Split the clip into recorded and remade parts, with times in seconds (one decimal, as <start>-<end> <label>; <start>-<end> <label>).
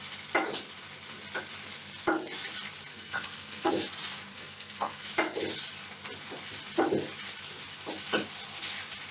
0.0-2.9 recorded; 2.9-3.7 remade; 3.7-4.3 recorded; 4.3-5.1 remade; 5.1-9.1 recorded